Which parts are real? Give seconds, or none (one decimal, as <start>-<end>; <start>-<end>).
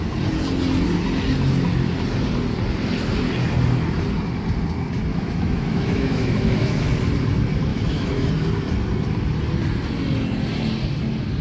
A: 0.0-5.1; 6.9-7.7; 8.3-11.4